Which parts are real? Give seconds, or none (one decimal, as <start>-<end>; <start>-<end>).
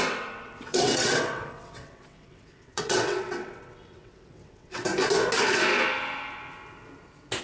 4.9-7.4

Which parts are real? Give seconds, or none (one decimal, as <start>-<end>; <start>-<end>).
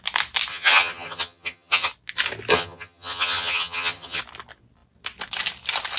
0.0-0.5; 1.9-2.5; 4.2-6.0